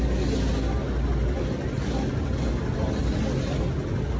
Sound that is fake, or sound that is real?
real